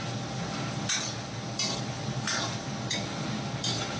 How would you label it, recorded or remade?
recorded